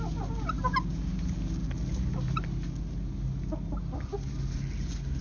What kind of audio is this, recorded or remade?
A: recorded